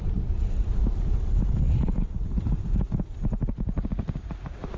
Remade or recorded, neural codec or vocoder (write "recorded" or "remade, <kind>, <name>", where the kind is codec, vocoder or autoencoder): recorded